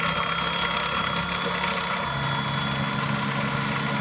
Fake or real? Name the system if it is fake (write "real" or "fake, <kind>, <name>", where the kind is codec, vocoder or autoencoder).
real